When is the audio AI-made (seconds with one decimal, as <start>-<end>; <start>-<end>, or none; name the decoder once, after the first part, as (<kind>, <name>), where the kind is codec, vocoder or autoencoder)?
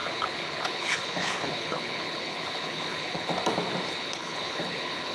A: 0.0-3.3 (codec, HILCodec); 3.9-5.1